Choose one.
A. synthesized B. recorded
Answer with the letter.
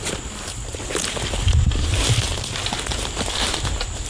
B